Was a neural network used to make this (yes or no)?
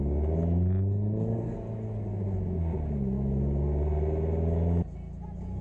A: no